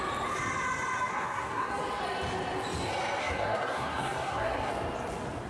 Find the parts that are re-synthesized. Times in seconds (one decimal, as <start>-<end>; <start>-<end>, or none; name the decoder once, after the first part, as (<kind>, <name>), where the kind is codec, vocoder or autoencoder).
1.1-1.7 (codec, SNAC); 3.2-4.7